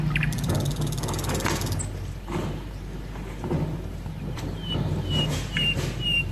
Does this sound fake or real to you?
fake